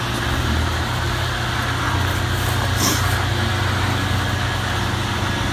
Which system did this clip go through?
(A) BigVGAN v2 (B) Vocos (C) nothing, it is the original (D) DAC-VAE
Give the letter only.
C